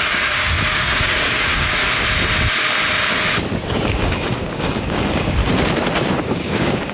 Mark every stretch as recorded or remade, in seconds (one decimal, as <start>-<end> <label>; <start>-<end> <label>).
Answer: 0.0-1.8 remade; 1.8-3.6 recorded; 3.6-5.4 remade; 5.4-6.2 recorded; 6.2-6.9 remade